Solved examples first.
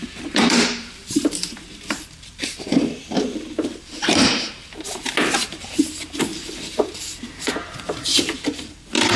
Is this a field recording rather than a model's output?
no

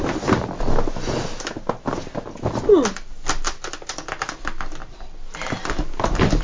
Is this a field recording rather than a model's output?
yes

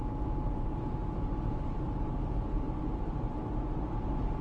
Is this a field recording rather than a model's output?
yes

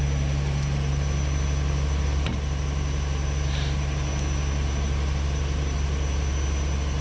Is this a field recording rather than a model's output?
yes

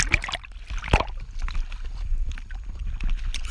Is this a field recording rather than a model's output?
yes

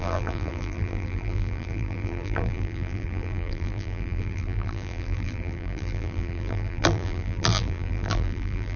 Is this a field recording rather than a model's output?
no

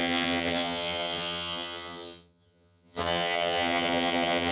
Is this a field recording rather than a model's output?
no